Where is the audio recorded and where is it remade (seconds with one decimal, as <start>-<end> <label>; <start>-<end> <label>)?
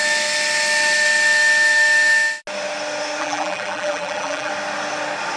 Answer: 0.0-3.2 recorded; 3.2-4.5 remade; 4.5-5.4 recorded